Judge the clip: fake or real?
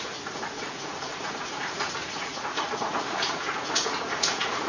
fake